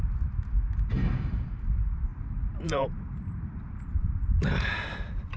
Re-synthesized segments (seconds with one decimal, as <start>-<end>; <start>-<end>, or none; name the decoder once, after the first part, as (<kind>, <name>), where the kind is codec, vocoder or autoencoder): 2.1-5.4 (vocoder, BigVGAN v2)